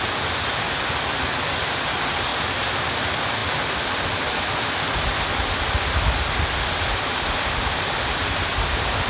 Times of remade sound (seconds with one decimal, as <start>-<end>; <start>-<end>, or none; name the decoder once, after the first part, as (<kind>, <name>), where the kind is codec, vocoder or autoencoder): 0.0-2.3 (vocoder, BigVGAN v2); 3.0-3.4; 8.0-9.1